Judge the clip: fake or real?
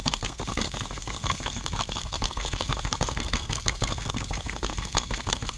fake